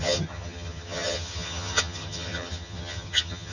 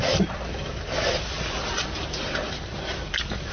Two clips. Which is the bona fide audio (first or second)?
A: second